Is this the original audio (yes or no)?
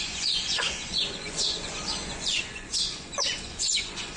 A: no